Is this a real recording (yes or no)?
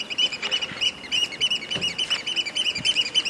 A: no